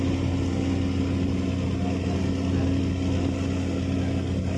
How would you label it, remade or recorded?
recorded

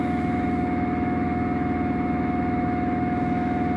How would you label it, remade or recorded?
remade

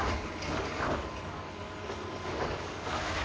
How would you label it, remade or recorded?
remade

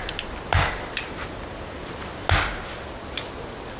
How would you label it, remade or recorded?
recorded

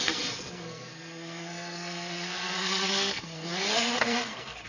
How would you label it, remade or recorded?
remade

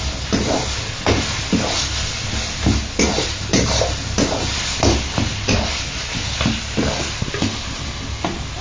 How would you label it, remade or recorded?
recorded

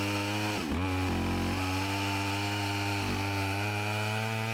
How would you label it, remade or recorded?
recorded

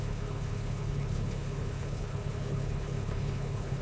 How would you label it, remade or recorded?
remade